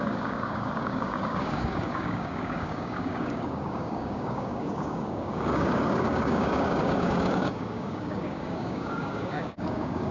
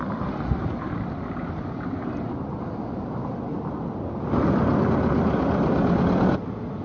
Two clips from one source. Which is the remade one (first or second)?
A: first